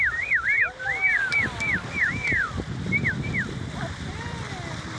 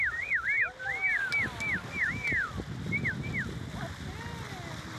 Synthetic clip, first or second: first